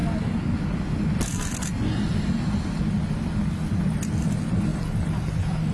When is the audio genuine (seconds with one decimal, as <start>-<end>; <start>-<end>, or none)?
0.0-5.7